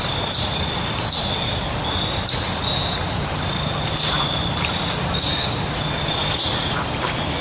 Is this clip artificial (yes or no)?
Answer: no